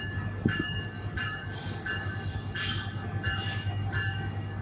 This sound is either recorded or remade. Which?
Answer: remade